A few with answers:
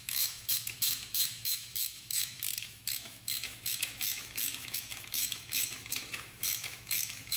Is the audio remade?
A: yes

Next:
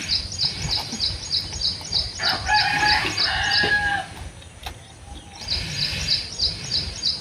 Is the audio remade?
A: no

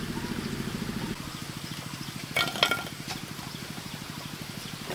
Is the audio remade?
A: no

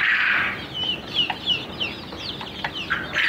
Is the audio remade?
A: no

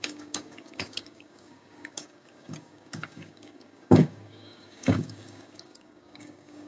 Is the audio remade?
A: yes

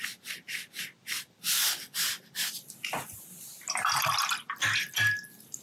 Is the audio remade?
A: no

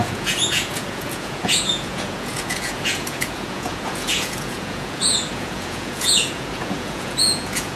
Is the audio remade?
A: yes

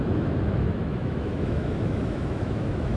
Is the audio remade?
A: yes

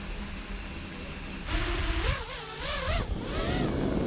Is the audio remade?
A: no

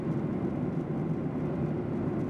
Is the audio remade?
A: no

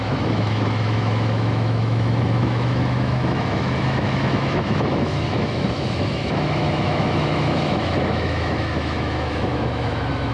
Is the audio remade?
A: yes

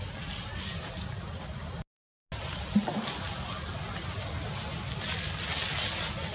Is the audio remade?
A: no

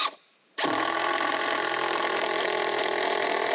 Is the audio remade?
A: yes